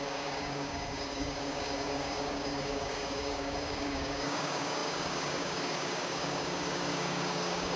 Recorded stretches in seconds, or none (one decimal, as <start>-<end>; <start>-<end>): none